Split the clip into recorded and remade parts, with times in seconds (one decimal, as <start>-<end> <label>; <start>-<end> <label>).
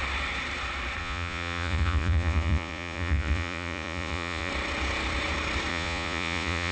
0.0-1.0 recorded; 1.0-4.5 remade; 4.5-5.7 recorded; 5.7-6.7 remade